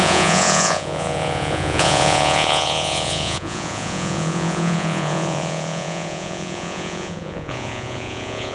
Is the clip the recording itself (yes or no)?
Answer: no